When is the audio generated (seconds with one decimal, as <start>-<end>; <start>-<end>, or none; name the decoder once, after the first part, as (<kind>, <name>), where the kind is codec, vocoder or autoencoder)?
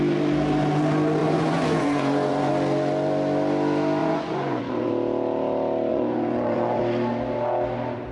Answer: 1.2-2.5 (vocoder, Vocos); 4.0-4.9; 5.9-6.8